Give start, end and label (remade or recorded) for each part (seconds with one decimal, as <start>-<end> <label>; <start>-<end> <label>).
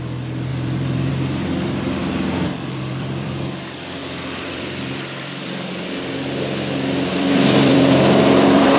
0.0-0.5 recorded; 0.5-1.1 remade; 1.1-2.0 recorded; 2.0-3.6 remade; 3.6-4.0 recorded; 4.0-5.7 remade; 5.7-7.1 recorded; 7.1-8.8 remade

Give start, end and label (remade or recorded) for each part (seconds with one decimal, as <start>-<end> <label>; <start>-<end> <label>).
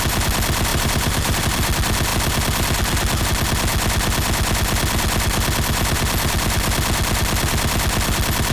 0.0-0.7 recorded; 0.7-1.4 remade; 1.4-8.5 recorded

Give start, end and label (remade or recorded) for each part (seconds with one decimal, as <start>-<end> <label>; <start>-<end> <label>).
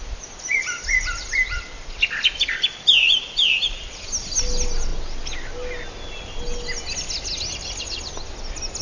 0.0-8.8 recorded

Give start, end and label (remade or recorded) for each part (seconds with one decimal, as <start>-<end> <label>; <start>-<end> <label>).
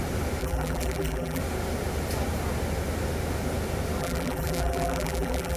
0.0-0.4 recorded; 0.4-1.4 remade; 1.4-4.0 recorded; 4.0-5.6 remade